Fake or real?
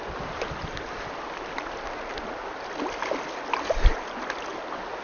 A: real